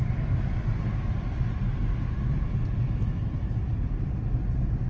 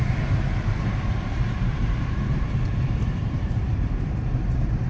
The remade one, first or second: second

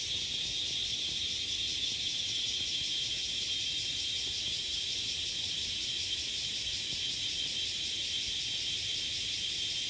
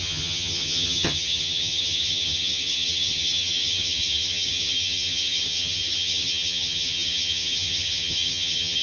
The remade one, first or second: second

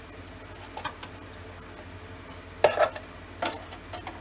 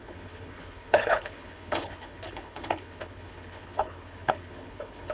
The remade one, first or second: second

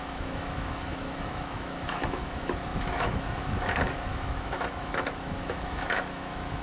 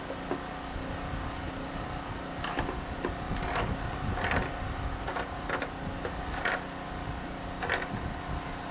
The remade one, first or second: first